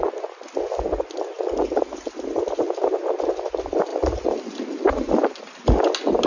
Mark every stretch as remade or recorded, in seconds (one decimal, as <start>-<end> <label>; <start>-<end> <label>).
0.0-3.9 recorded; 3.9-5.1 remade; 5.1-6.3 recorded